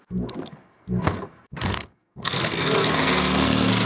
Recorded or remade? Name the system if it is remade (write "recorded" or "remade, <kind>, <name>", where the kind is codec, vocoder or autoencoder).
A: remade, codec, SNAC